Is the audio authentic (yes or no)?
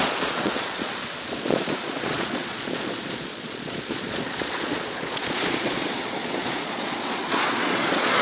no